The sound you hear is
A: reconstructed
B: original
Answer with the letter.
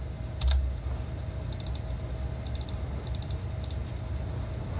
B